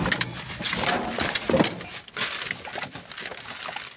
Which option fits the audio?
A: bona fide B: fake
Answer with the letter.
A